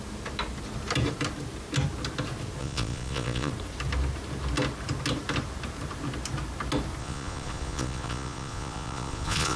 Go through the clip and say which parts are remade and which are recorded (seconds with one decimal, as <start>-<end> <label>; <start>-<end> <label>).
0.0-2.6 recorded; 2.6-3.5 remade; 3.5-7.0 recorded; 7.0-9.6 remade